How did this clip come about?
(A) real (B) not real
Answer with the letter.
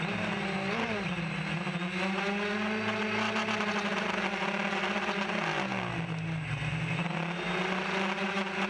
A